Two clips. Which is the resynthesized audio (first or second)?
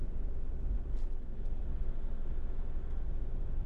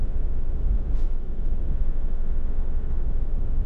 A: second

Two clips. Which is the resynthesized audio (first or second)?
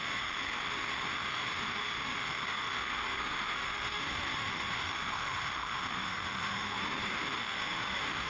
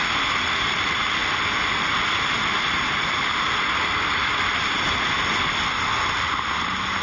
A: first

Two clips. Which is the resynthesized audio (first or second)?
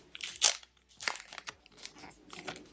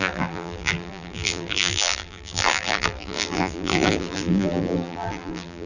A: second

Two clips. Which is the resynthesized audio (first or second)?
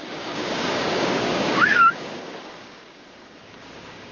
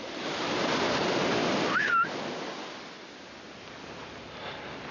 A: first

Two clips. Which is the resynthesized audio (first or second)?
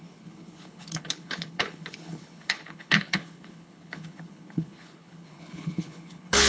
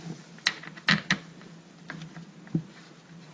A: first